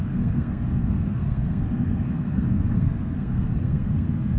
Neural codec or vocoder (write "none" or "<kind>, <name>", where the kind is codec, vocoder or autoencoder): codec, SNAC